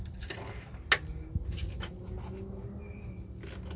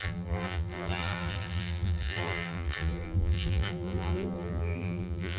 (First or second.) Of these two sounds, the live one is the first